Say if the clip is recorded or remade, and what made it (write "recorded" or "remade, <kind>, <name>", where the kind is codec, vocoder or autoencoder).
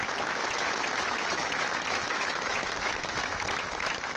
remade, autoencoder, DAC-VAE